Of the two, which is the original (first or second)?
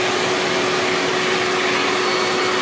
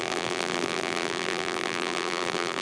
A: first